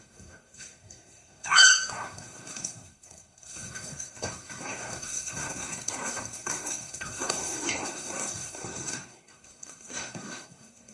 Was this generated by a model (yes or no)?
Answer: yes